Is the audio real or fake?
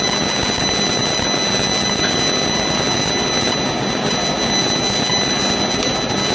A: real